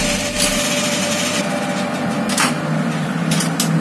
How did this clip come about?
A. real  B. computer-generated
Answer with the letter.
A